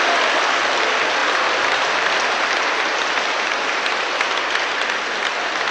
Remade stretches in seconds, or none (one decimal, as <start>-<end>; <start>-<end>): none